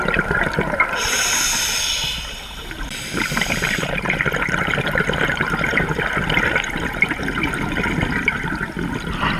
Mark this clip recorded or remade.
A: recorded